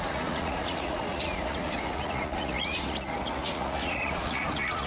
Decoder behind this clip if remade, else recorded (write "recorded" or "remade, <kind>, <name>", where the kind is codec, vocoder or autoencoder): remade, vocoder, Vocos